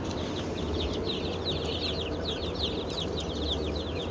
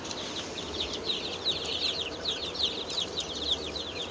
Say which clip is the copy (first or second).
second